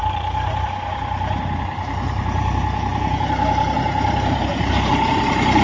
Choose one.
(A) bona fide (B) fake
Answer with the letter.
B